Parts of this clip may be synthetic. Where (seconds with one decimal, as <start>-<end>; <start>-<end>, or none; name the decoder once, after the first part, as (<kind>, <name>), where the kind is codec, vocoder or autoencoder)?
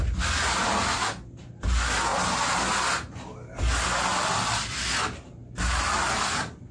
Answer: none